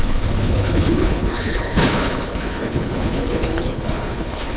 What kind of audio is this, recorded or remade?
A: remade